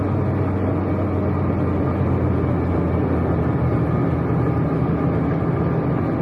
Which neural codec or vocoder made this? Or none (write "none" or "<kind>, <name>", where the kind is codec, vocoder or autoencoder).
none